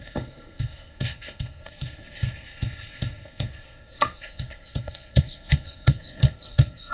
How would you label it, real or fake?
fake